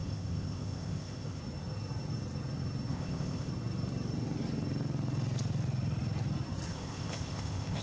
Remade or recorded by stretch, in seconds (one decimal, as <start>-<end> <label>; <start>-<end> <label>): 0.0-1.4 remade; 1.4-2.9 recorded; 2.9-3.5 remade; 3.5-6.7 recorded; 6.7-7.8 remade